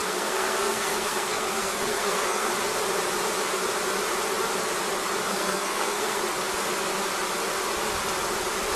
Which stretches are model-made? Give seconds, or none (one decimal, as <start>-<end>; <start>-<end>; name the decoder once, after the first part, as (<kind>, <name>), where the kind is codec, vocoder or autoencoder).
0.0-2.5 (codec, SNAC); 5.3-6.2